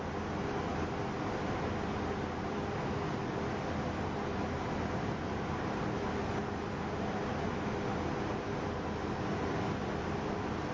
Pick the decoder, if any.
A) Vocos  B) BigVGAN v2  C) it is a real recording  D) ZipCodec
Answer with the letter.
C